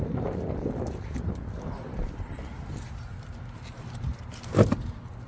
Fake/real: real